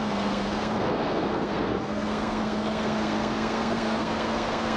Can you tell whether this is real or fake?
fake